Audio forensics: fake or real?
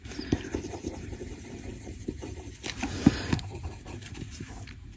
fake